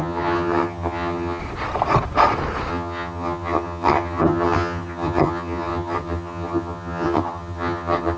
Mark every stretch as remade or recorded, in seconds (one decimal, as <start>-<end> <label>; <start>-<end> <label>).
0.0-1.4 remade; 1.4-2.7 recorded; 2.7-8.2 remade